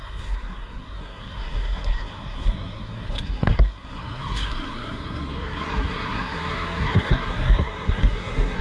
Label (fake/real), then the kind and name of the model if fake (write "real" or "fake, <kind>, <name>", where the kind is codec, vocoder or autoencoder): fake, codec, SNAC